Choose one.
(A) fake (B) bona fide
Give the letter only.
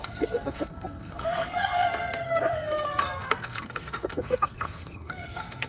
A